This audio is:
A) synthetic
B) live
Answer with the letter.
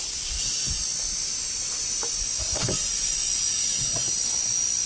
B